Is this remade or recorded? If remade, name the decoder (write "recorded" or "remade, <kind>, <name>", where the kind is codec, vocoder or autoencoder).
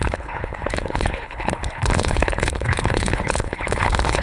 remade, codec, HILCodec